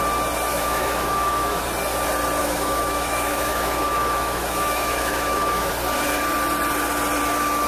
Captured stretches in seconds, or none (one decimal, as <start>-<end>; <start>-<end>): 0.0-0.5; 1.6-2.4; 5.7-7.7